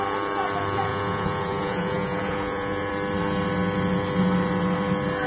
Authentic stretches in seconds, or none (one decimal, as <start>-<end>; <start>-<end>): 0.0-0.9; 2.9-5.3